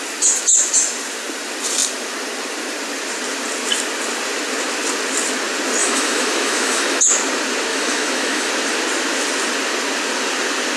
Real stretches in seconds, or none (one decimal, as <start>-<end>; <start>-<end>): 0.0-5.8; 7.0-7.7; 8.5-10.8